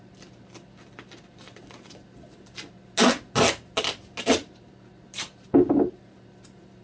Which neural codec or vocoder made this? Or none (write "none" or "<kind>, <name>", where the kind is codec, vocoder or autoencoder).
none